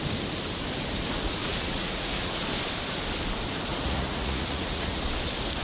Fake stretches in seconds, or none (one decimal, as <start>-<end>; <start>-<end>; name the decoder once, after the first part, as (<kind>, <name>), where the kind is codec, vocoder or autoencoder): 1.4-2.3 (vocoder, Vocos); 3.7-5.0